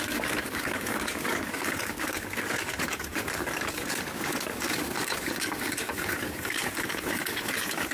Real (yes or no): no